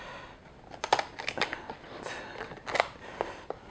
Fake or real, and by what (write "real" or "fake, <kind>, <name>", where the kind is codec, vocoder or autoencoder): real